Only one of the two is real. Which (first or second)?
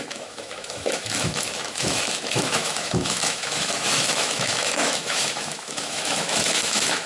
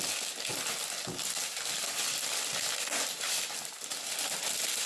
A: second